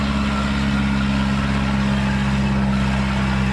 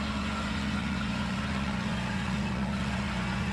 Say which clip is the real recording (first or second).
first